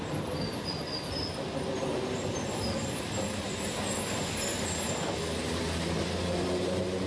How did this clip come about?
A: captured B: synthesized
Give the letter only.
A